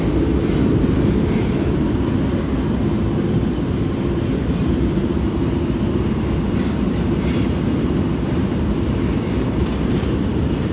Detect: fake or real real